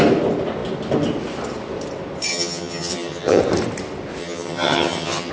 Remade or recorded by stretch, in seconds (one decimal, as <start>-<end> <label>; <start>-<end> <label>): 0.0-2.3 recorded; 2.3-3.4 remade; 3.4-4.2 recorded; 4.2-5.3 remade